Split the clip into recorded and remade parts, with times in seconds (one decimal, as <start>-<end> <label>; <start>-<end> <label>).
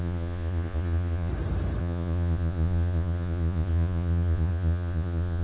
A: 0.0-1.3 remade; 1.3-1.8 recorded; 1.8-5.4 remade